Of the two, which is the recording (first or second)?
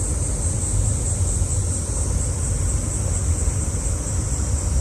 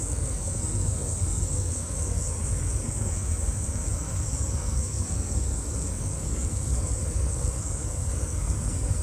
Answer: first